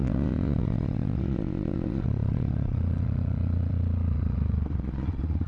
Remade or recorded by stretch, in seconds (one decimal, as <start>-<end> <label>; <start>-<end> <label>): 0.0-5.5 remade

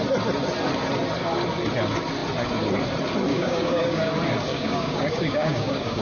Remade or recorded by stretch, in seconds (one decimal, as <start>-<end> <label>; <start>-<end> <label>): 0.0-3.3 recorded; 3.3-4.1 remade; 4.1-4.5 recorded; 4.5-6.0 remade

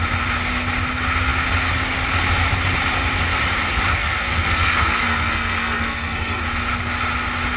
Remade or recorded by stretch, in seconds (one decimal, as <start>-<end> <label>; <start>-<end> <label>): 0.0-4.0 recorded; 4.0-6.4 remade; 6.4-7.6 recorded

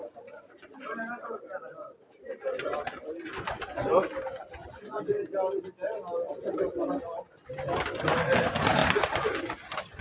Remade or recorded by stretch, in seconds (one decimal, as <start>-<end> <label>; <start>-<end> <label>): 0.0-10.0 recorded

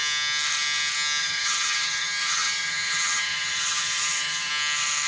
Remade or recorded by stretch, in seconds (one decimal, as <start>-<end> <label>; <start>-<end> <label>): 0.0-1.2 recorded; 1.2-4.5 remade; 4.5-5.1 recorded

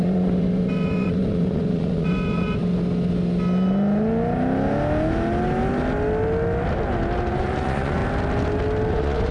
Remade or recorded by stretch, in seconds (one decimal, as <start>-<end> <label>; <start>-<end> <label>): 0.0-2.6 remade; 2.6-7.3 recorded; 7.3-8.0 remade; 8.0-8.9 recorded; 8.9-9.3 remade

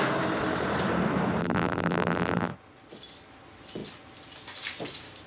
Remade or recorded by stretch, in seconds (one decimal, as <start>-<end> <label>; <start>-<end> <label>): 0.0-1.4 recorded; 1.4-2.5 remade; 2.5-5.3 recorded